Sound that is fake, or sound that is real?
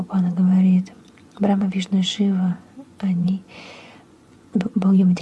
fake